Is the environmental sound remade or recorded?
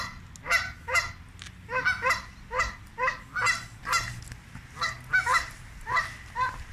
recorded